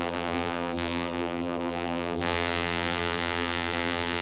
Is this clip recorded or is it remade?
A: remade